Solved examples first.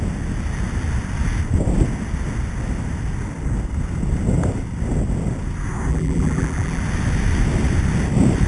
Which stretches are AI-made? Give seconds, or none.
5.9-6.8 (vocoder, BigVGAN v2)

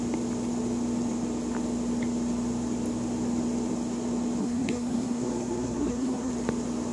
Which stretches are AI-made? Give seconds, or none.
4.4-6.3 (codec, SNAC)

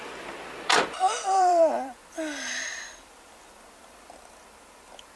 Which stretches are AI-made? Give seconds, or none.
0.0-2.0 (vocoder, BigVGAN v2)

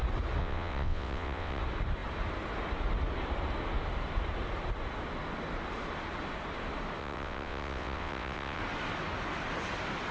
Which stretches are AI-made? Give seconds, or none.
0.4-1.6 (vocoder, WaveNeXt); 7.0-8.6